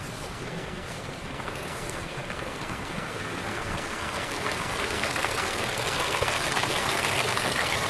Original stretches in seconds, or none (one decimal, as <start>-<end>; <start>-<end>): none